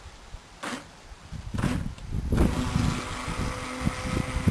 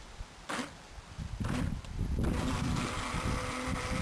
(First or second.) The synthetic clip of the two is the second